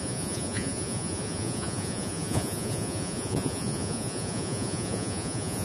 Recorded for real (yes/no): no